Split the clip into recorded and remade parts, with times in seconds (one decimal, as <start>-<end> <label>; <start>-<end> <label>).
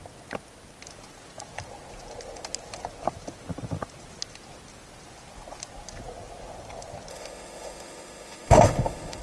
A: 0.0-7.1 recorded; 7.1-9.2 remade